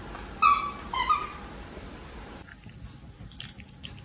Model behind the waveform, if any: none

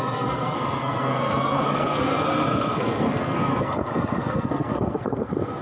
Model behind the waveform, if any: codec, SNAC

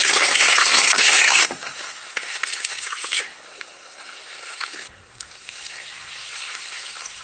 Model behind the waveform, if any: codec, SNAC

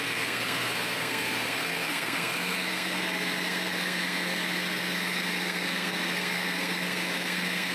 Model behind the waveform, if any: codec, SNAC